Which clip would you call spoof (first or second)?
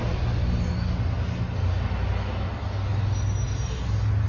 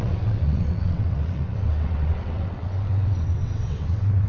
second